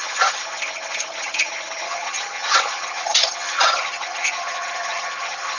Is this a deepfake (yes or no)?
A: yes